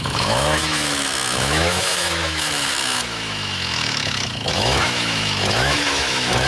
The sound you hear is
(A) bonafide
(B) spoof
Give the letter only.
B